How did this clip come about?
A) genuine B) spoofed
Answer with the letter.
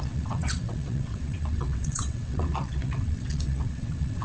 B